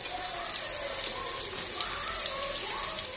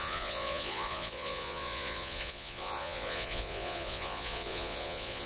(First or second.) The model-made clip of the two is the second